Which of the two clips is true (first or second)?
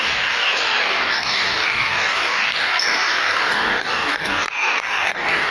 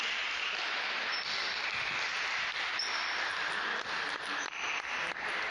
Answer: second